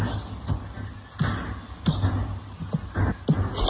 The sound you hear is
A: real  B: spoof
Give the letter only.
A